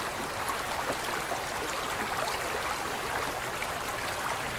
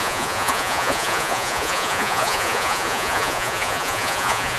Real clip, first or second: first